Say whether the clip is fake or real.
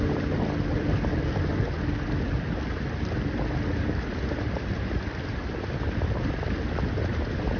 real